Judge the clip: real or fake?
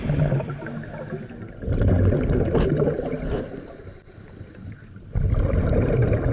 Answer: real